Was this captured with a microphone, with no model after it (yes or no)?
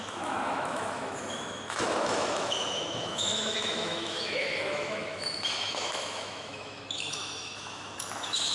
no